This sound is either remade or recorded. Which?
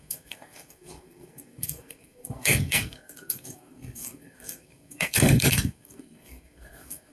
remade